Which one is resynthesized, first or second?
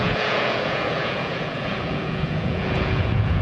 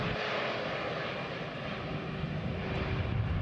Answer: first